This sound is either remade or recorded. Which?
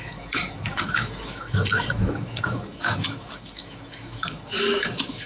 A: remade